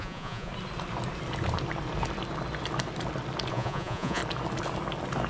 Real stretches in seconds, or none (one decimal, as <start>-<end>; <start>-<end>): 0.5-3.5; 4.2-5.3